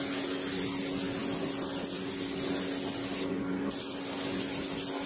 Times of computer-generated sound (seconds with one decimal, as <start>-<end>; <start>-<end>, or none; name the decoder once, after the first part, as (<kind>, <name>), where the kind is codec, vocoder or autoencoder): none